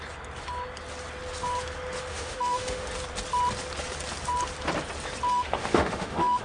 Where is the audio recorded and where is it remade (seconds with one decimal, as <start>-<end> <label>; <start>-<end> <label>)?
0.0-2.1 recorded; 2.1-2.9 remade; 2.9-5.3 recorded; 5.3-6.4 remade